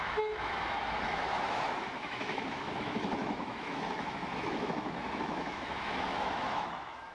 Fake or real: fake